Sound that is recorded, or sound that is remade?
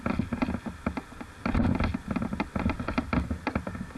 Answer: recorded